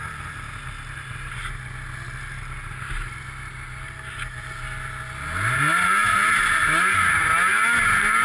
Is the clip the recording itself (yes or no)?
yes